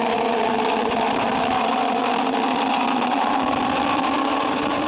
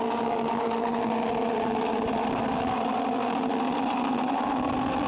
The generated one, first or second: first